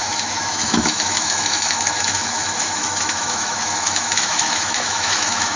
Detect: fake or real fake